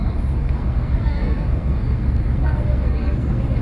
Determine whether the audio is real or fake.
fake